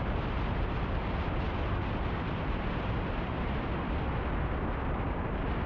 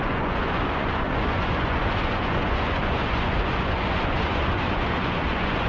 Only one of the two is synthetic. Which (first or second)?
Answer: second